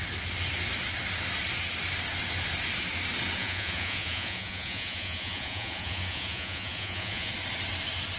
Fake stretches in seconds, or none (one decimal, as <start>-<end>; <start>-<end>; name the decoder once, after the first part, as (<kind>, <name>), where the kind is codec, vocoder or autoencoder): 3.4-7.3 (vocoder, Vocos)